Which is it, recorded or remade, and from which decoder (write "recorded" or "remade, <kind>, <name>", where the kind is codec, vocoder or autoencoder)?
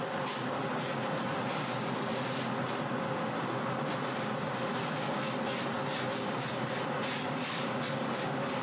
recorded